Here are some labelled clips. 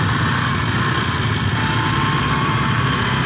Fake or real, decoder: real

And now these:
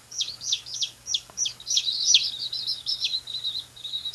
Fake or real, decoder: fake, codec, DAC